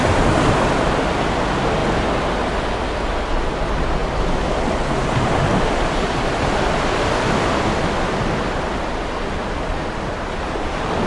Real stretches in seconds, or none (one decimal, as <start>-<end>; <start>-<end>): 0.0-11.1